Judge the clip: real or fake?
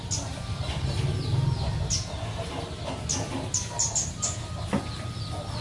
real